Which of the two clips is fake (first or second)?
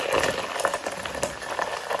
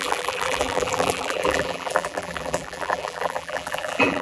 second